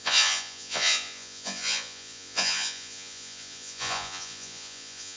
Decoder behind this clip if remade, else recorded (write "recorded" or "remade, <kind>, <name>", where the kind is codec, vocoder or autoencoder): remade, vocoder, Vocos